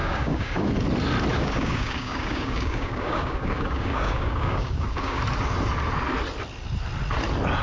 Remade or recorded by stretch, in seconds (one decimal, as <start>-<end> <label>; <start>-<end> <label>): 0.0-0.7 remade; 0.7-1.3 recorded; 1.3-5.2 remade; 5.2-7.6 recorded